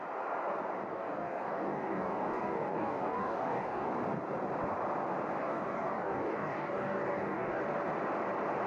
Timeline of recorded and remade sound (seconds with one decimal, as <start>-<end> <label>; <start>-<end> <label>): 0.0-0.9 recorded; 0.9-3.9 remade; 3.9-5.4 recorded; 5.4-7.6 remade; 7.6-8.7 recorded

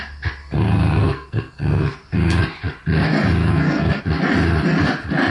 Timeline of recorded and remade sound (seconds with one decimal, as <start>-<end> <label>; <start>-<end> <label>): 0.0-0.4 recorded; 0.4-2.4 remade; 2.4-3.4 recorded; 3.4-4.0 remade; 4.0-5.3 recorded

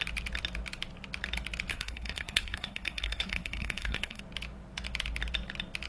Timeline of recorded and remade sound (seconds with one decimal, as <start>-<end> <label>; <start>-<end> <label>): 0.0-1.7 recorded; 1.7-4.2 remade; 4.2-5.9 recorded

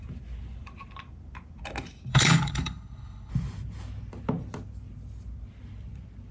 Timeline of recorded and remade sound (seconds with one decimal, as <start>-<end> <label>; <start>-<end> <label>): 0.0-2.1 recorded; 2.1-3.3 remade; 3.3-6.3 recorded

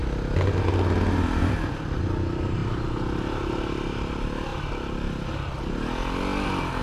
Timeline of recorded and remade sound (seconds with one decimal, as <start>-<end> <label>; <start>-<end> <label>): 0.0-1.4 recorded; 1.4-4.5 remade; 4.5-6.8 recorded